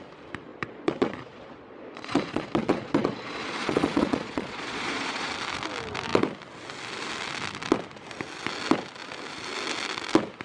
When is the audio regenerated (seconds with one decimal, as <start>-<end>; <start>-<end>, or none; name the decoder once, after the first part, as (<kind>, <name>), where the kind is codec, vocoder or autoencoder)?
0.5-5.3 (vocoder, Vocos)